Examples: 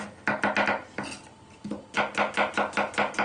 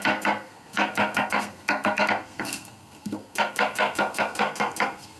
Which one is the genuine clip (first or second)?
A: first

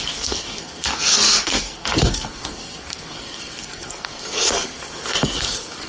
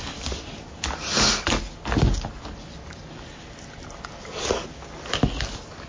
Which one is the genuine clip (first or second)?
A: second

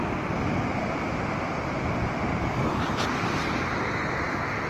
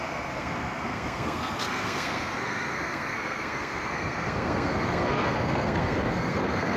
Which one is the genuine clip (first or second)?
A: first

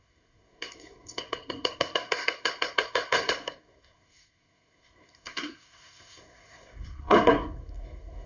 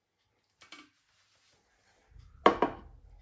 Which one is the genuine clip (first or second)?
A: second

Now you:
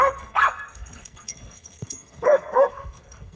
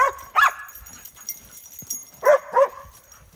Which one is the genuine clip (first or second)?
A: second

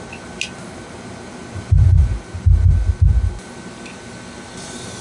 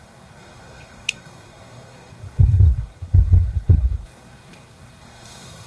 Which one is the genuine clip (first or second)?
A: first